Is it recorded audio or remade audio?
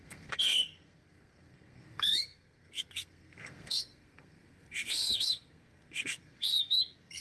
remade